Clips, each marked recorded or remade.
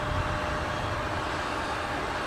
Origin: recorded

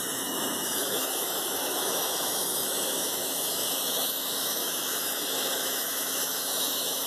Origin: remade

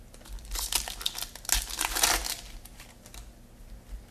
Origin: recorded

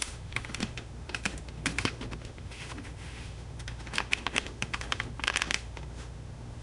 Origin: remade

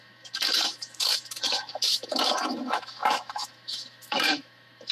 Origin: remade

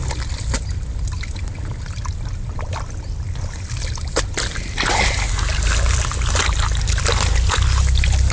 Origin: recorded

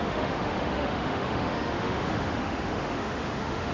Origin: remade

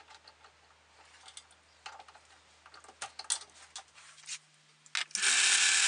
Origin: recorded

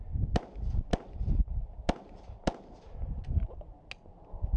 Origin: recorded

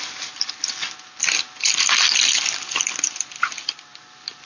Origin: recorded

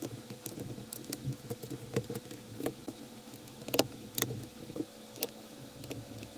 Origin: remade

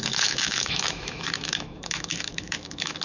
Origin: remade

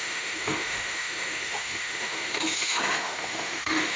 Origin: remade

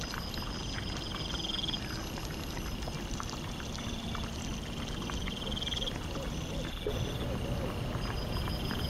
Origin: recorded